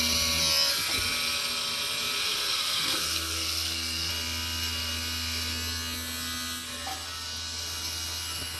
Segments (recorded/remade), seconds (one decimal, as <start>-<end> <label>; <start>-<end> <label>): 0.0-2.2 recorded; 2.2-4.1 remade; 4.1-8.6 recorded